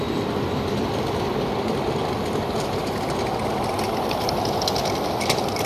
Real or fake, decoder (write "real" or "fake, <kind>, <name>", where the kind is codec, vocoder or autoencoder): real